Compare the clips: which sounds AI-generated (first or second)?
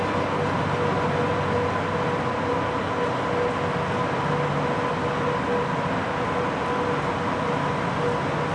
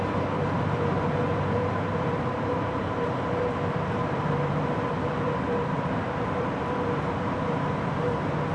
second